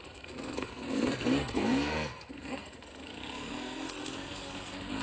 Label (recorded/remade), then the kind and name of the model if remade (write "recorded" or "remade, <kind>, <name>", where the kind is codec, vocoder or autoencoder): remade, codec, SNAC